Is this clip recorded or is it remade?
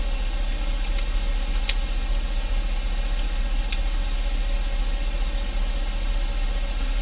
recorded